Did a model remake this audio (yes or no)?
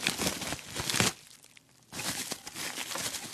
no